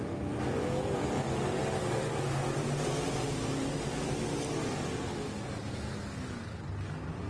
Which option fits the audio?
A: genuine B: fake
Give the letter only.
A